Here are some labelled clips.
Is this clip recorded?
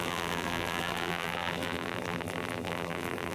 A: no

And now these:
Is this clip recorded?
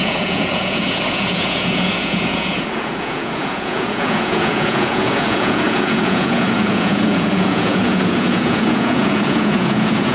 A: no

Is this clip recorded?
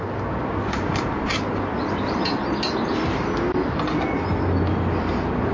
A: yes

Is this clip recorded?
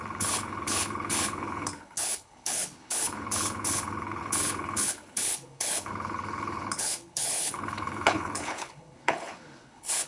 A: no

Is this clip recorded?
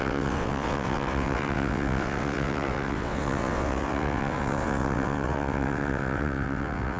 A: no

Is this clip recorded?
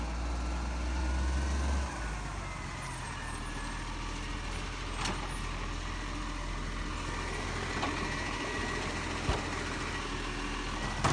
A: yes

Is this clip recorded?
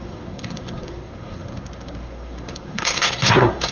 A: no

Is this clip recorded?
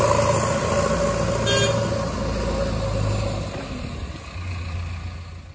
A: yes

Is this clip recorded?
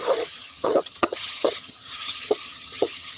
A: no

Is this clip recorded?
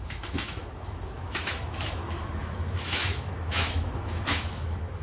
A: no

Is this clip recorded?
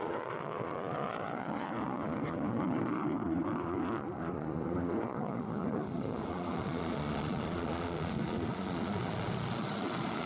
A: no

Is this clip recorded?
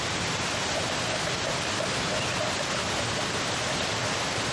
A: yes